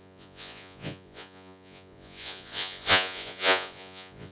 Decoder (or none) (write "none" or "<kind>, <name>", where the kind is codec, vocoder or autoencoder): vocoder, Vocos